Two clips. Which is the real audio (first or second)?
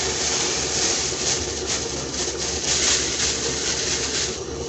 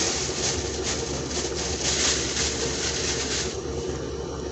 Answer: second